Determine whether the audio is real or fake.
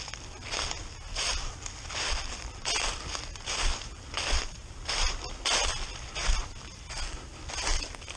real